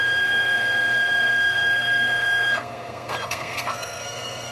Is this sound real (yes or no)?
no